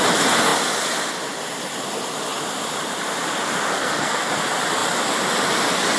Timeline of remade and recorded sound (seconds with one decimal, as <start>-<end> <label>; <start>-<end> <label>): 0.0-3.7 recorded; 3.7-4.3 remade; 4.3-6.0 recorded